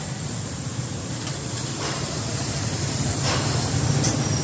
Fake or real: fake